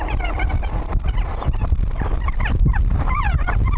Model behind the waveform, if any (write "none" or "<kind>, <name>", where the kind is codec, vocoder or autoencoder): vocoder, BigVGAN v2